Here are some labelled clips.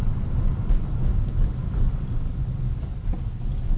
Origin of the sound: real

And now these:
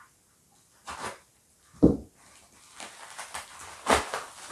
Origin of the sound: real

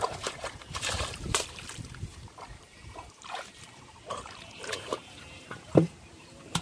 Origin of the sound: fake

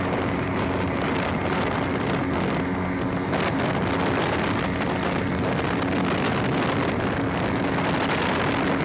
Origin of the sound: real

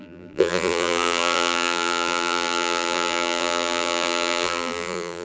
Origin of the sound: fake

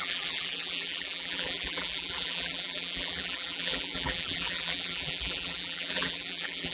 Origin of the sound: fake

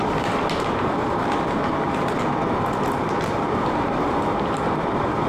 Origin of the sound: fake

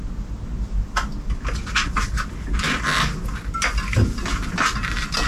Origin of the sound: real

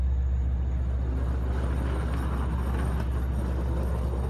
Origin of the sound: real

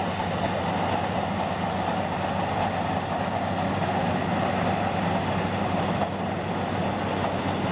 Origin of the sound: real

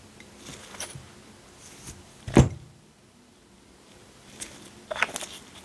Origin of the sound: real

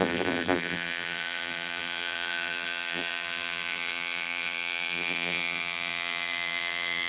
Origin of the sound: fake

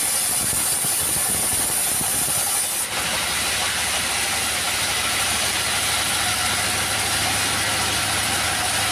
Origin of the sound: real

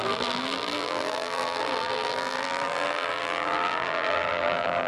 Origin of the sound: fake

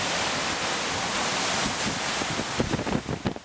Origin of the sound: real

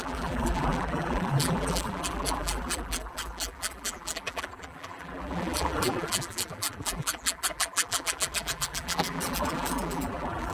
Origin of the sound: fake